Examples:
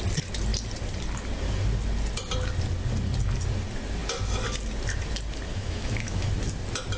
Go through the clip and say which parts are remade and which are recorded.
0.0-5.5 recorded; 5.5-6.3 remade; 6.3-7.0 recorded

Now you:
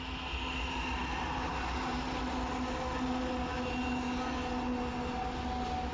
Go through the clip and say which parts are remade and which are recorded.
0.0-5.9 recorded

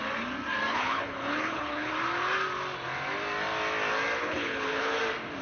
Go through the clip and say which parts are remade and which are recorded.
0.0-0.7 recorded; 0.7-1.9 remade; 1.9-4.2 recorded; 4.2-5.0 remade; 5.0-5.4 recorded

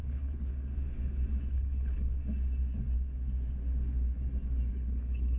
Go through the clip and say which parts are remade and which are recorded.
0.0-0.5 remade; 0.5-1.5 recorded; 1.5-2.2 remade; 2.2-4.7 recorded; 4.7-5.4 remade